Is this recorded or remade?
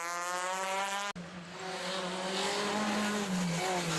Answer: recorded